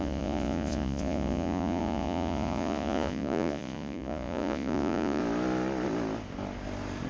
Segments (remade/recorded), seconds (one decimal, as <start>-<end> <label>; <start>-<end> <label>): 0.0-5.2 remade; 5.2-7.1 recorded